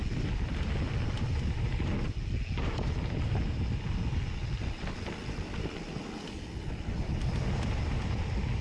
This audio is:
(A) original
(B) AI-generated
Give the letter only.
A